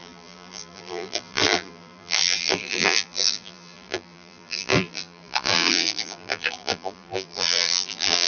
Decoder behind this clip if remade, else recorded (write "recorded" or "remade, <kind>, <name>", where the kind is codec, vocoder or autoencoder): remade, vocoder, BigVGAN v2